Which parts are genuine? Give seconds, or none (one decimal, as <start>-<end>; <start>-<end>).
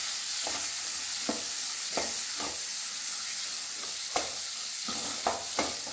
0.0-5.9